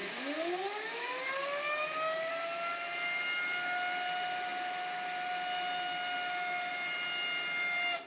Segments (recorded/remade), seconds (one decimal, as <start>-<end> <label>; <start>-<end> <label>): 0.0-2.3 remade; 2.3-8.1 recorded